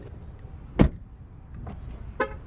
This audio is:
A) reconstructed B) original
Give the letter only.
B